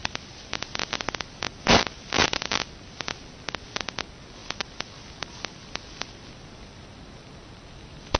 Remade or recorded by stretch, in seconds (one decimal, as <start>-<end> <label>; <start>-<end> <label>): 0.0-1.0 remade; 1.0-2.2 recorded; 2.2-3.0 remade; 3.0-4.4 recorded; 4.4-4.9 remade; 4.9-5.6 recorded; 5.6-8.2 remade